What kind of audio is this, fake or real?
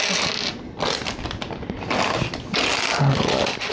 real